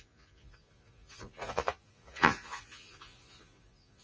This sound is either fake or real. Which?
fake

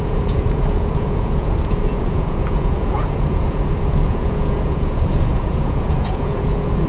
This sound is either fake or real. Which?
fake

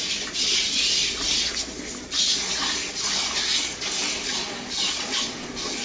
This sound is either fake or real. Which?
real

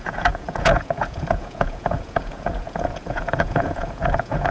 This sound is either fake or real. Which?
fake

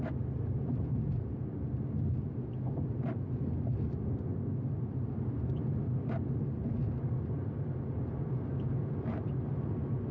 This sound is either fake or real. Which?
real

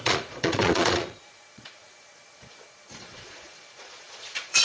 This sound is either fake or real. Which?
fake